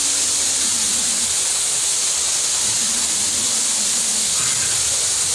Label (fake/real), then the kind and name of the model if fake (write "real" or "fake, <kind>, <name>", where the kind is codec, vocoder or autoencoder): real